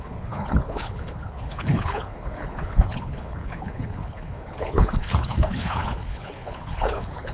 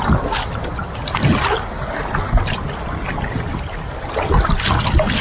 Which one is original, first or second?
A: second